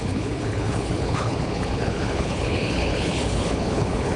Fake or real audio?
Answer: fake